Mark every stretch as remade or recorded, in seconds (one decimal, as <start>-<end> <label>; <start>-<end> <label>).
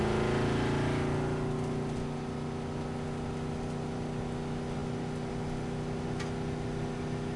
0.0-7.4 recorded